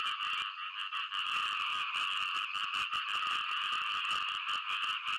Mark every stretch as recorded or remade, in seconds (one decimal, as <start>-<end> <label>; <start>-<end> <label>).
0.0-0.8 recorded; 0.8-3.9 remade; 3.9-5.2 recorded